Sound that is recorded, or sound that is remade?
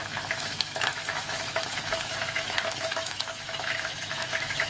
remade